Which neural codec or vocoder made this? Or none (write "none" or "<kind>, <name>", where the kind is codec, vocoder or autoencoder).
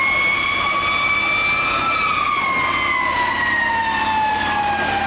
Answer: none